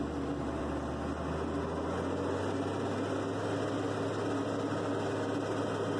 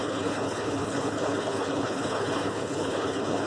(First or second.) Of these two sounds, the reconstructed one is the second